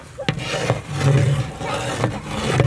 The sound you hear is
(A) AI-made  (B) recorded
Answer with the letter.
B